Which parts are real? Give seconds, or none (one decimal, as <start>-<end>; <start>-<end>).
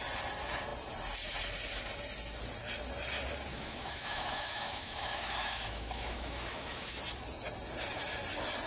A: 0.0-3.5; 7.0-8.7